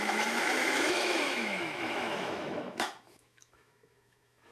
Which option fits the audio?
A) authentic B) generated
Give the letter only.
B